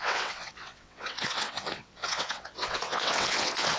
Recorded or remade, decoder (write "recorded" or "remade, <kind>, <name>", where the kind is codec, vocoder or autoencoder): remade, vocoder, WaveNeXt